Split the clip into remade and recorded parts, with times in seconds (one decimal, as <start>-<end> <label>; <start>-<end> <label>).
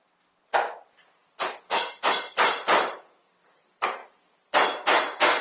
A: 0.0-5.4 recorded